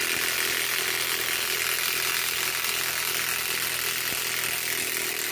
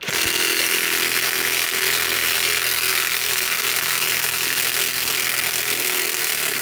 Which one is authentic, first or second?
first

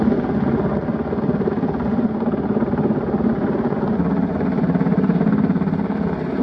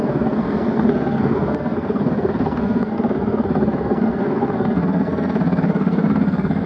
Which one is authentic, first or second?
first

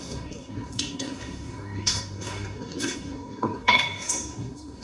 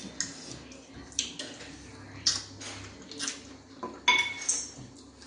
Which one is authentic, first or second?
second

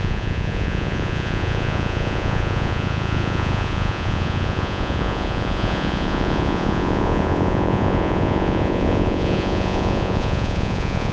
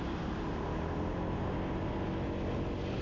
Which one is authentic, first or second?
second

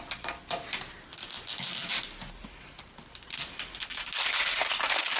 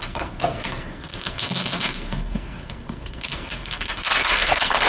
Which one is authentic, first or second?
first